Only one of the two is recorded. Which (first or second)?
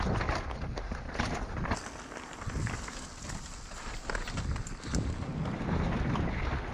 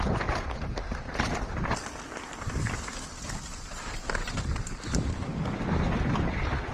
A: first